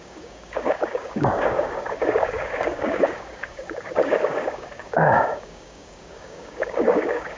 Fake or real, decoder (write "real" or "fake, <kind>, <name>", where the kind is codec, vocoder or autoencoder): fake, codec, DAC